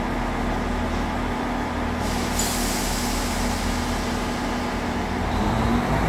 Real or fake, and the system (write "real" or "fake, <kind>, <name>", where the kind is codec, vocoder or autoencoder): real